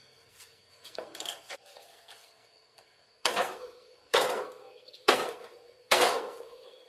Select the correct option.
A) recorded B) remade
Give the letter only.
B